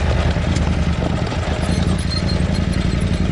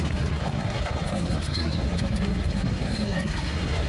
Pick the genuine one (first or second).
first